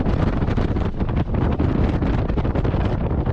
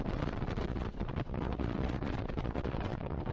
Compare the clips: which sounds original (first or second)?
first